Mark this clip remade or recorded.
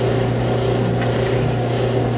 recorded